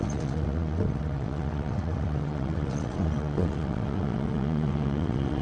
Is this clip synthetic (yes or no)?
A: yes